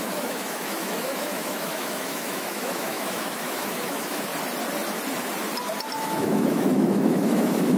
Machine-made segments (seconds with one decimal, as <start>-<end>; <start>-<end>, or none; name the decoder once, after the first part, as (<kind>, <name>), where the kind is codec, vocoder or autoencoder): 0.0-4.3 (autoencoder, DAC-VAE); 6.0-7.8